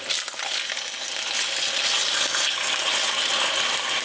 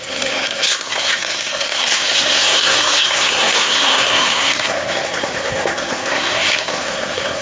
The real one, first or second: first